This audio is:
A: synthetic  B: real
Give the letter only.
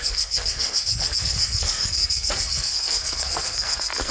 A